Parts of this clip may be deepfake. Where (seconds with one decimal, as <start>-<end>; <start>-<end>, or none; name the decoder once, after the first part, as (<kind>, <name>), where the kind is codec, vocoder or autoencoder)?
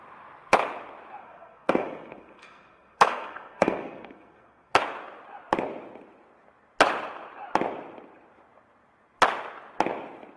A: 1.2-4.8 (codec, SNAC)